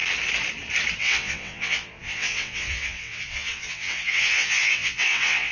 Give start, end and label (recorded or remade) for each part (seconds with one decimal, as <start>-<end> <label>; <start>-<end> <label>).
0.0-1.0 recorded; 1.0-5.5 remade